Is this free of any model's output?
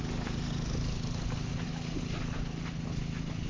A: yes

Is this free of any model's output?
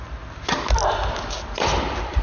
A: yes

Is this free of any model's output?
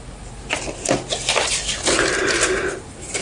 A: yes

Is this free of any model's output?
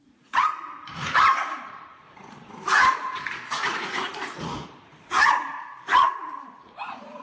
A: no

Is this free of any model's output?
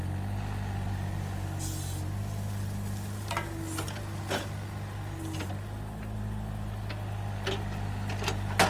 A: yes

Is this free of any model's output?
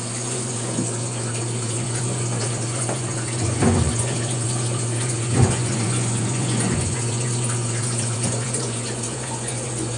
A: no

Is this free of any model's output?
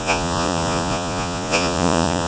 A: no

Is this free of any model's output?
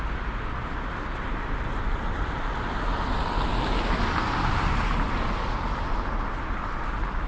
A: yes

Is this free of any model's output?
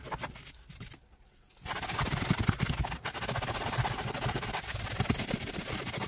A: yes